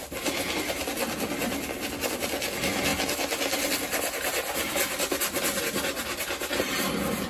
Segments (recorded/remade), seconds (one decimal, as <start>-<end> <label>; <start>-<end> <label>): 0.0-7.3 recorded